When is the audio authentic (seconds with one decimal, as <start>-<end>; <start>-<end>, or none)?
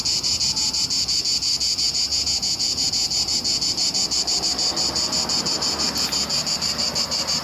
0.0-2.1; 2.9-7.4